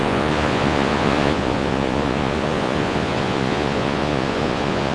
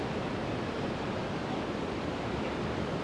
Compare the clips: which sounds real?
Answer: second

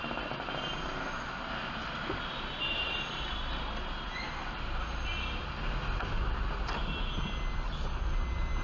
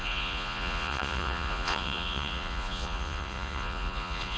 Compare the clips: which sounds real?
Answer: first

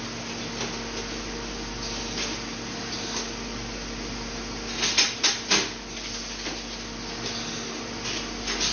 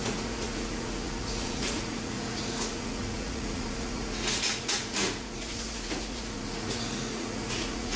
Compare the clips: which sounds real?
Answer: first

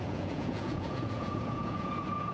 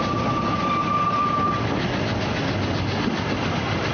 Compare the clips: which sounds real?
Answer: second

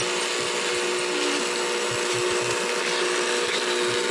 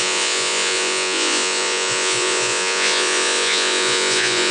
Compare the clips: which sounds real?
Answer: first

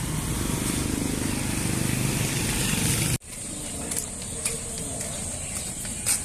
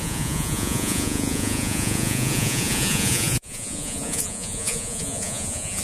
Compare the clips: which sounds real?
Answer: first